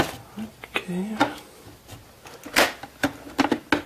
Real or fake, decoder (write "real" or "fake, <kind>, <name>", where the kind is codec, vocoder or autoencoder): real